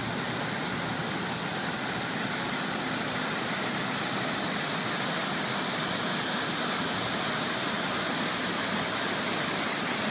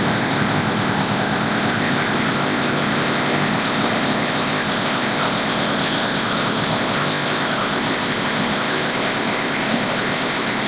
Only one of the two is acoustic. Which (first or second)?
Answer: first